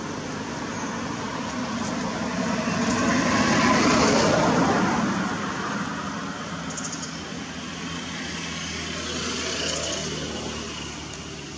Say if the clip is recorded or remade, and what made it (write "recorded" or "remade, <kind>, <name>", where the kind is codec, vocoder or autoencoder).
recorded